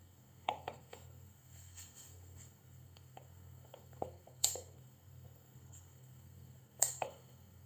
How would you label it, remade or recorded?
remade